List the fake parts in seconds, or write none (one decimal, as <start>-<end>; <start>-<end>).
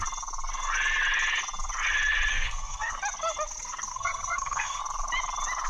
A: 2.3-2.9; 3.9-4.8